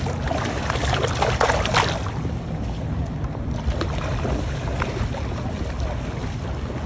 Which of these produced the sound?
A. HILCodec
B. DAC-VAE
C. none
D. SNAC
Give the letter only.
C